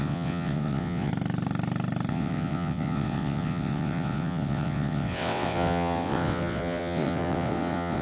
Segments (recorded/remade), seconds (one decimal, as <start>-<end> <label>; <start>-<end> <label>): 0.0-1.1 remade; 1.1-2.1 recorded; 2.1-8.0 remade